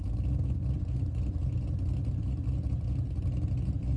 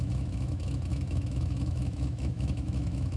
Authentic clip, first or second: first